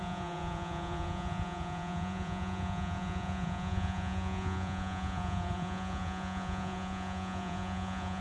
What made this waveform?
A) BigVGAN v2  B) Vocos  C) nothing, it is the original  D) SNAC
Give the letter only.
B